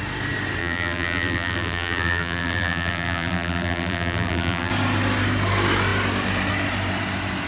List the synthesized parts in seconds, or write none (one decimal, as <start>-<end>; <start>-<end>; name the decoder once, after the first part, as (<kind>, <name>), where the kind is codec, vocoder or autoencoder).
0.6-4.7 (vocoder, BigVGAN v2)